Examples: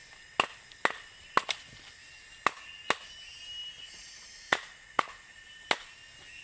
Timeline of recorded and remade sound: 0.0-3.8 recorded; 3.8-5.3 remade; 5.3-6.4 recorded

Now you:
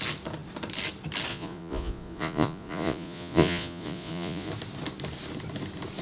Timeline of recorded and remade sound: 0.0-1.3 recorded; 1.3-4.5 remade; 4.5-6.0 recorded

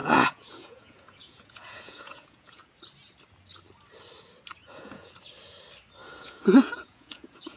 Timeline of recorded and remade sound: 0.0-2.7 remade; 2.7-4.6 recorded; 4.6-5.1 remade; 5.1-6.0 recorded; 6.0-7.6 remade

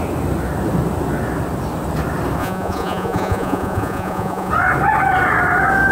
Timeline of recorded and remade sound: 0.0-2.4 recorded; 2.4-4.5 remade; 4.5-5.9 recorded

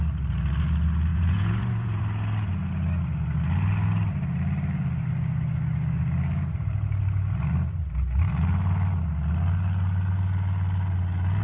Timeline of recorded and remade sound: 0.0-1.1 recorded; 1.1-2.0 remade; 2.0-11.4 recorded

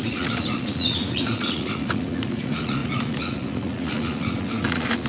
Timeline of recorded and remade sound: 0.0-5.1 remade

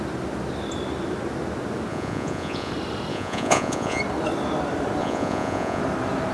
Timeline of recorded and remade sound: 0.0-1.9 recorded; 1.9-2.7 remade; 2.7-3.1 recorded; 3.1-4.0 remade; 4.0-5.0 recorded; 5.0-5.8 remade; 5.8-6.3 recorded

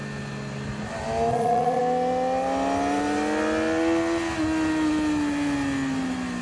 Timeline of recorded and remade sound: 0.0-1.3 recorded; 1.3-1.8 remade; 1.8-6.4 recorded